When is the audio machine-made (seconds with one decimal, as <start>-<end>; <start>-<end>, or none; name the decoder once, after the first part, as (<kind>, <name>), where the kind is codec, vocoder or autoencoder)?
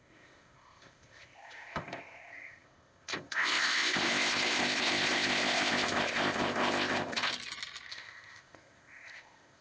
0.0-7.3 (codec, ZipCodec); 7.9-9.6